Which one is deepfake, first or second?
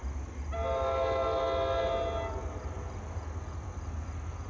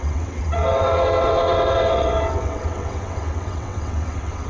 second